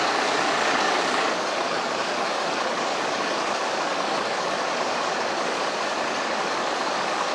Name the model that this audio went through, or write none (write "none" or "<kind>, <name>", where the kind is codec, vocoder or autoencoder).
codec, DAC